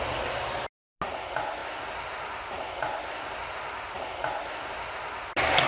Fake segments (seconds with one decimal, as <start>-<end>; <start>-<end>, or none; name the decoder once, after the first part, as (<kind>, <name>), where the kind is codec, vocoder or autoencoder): none